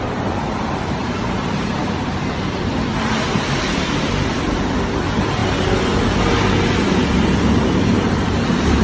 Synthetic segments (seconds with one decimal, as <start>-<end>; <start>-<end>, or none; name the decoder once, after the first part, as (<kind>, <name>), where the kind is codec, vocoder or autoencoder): 0.0-2.7 (vocoder, BigVGAN v2); 4.1-8.8